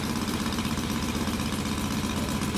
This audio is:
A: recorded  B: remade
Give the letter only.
A